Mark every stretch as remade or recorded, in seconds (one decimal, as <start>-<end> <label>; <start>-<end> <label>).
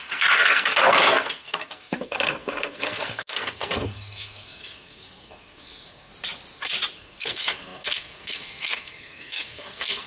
0.0-6.1 remade; 6.1-6.9 recorded; 6.9-10.1 remade